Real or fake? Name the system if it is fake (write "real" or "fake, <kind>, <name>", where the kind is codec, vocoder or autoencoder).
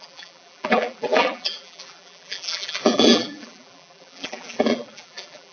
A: fake, vocoder, BigVGAN v2